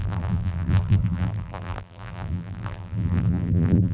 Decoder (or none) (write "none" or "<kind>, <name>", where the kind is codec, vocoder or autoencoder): vocoder, BigVGAN v2